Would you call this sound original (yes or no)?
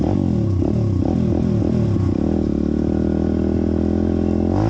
yes